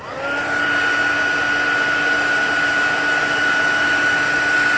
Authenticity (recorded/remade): recorded